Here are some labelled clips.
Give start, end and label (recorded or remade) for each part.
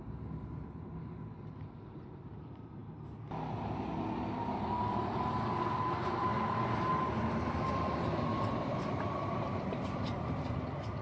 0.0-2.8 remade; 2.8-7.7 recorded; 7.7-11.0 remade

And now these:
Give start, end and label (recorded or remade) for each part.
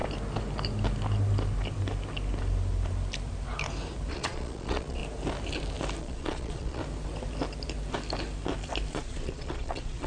0.0-4.1 recorded; 4.1-5.0 remade; 5.0-6.0 recorded; 6.0-6.8 remade; 6.8-8.9 recorded; 8.9-10.1 remade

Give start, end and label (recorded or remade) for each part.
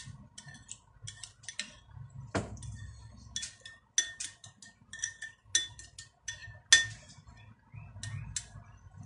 0.0-9.1 recorded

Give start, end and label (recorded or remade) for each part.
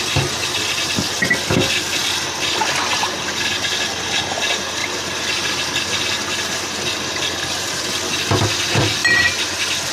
0.0-9.9 recorded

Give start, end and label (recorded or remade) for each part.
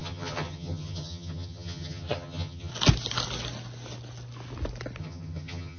0.0-2.7 remade; 2.7-5.0 recorded; 5.0-5.8 remade